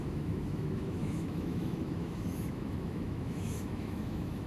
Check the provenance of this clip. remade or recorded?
remade